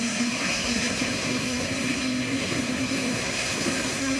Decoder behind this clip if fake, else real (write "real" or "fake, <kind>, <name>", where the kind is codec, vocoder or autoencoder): fake, codec, SNAC